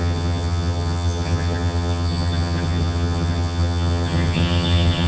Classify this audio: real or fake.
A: fake